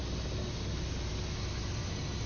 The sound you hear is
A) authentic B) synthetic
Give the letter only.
A